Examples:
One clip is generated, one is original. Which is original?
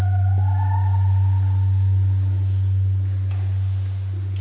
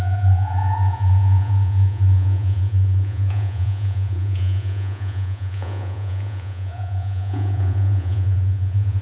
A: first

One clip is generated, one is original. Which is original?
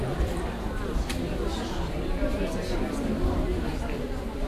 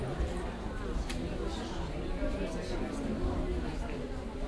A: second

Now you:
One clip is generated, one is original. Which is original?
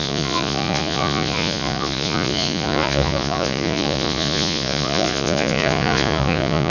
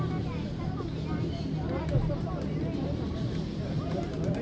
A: second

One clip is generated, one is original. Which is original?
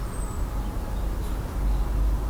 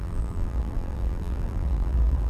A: first